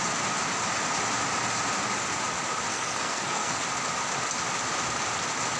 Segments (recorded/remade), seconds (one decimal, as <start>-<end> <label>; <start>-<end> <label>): 0.0-2.7 recorded; 2.7-3.6 remade; 3.6-5.6 recorded